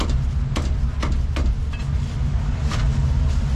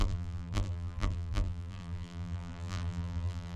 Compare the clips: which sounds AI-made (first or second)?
second